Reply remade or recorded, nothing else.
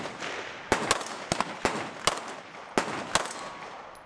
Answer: recorded